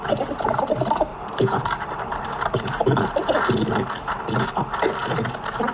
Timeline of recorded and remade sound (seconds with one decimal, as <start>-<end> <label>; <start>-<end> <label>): 0.0-1.1 recorded; 1.1-3.1 remade; 3.1-5.7 recorded